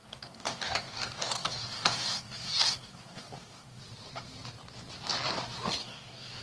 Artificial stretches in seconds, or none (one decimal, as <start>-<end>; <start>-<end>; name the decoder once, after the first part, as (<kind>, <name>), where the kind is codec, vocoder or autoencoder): 0.0-3.8 (codec, DAC); 5.8-6.4